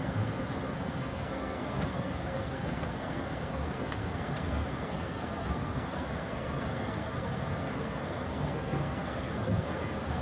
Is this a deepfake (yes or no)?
yes